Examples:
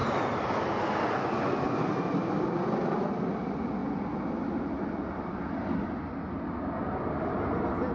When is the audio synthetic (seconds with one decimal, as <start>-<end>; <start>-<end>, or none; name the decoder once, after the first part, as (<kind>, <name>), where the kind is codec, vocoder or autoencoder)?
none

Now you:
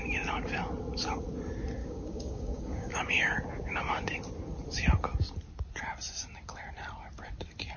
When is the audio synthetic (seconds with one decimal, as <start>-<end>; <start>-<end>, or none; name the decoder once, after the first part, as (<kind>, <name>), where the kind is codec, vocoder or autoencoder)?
1.8-2.9 (codec, DAC)

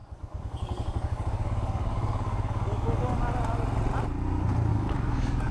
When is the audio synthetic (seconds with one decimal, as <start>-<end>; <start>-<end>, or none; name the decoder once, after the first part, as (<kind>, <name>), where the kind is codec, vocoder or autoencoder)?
0.0-3.3 (codec, DAC); 4.7-5.5

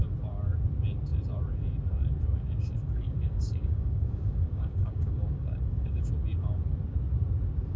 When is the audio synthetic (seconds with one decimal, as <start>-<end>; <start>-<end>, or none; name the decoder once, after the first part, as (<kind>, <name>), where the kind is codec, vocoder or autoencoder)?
2.8-6.1 (codec, DAC)

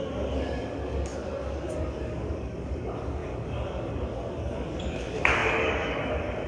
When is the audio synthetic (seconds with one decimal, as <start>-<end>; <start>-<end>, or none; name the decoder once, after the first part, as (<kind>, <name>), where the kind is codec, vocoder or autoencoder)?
0.0-6.5 (codec, DAC)